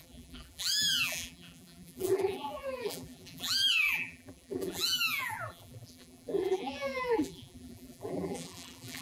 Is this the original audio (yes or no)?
no